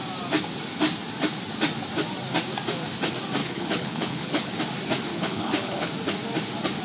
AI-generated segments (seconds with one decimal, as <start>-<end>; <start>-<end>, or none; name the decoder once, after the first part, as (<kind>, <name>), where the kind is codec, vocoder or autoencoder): 3.4-4.5 (codec, HILCodec); 5.1-5.9